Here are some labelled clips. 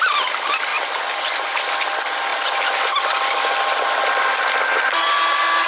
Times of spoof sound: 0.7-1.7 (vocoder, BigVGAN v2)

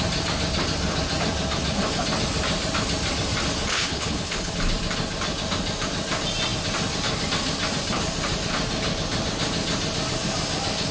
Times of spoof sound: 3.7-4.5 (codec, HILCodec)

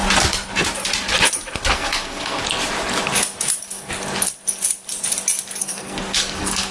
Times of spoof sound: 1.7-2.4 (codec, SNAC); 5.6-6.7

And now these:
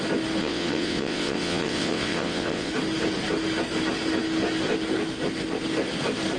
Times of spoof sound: 0.4-2.7 (vocoder, WaveNeXt)

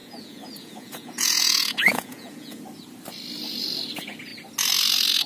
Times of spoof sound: 0.0-2.6 (vocoder, Vocos)

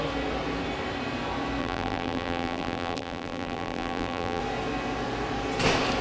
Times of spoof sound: 1.6-4.4 (vocoder, BigVGAN v2)